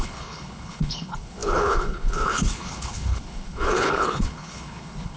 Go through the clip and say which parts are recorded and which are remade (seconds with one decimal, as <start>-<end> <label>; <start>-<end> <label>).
0.0-5.2 remade